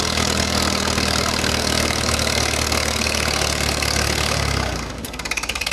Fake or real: fake